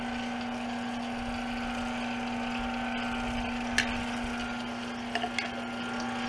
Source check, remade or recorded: recorded